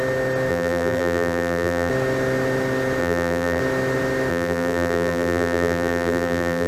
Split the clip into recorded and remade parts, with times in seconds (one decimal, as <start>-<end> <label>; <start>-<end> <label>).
0.0-0.5 recorded; 0.5-1.9 remade; 1.9-3.0 recorded; 3.0-3.6 remade; 3.6-4.3 recorded; 4.3-6.7 remade